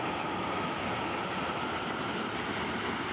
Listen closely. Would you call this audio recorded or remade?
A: recorded